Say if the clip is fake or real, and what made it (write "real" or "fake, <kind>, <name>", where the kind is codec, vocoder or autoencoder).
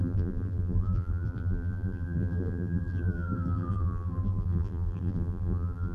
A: fake, vocoder, BigVGAN v2